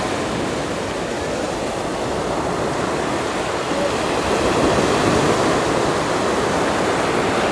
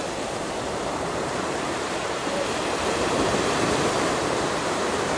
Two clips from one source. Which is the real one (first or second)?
first